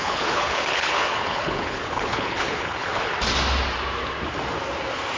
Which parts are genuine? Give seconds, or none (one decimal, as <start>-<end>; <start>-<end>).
3.1-5.2